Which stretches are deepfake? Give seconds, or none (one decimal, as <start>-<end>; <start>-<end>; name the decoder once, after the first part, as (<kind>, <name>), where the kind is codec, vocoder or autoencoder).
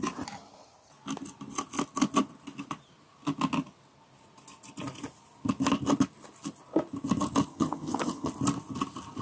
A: 7.5-8.3 (vocoder, HiFi-GAN)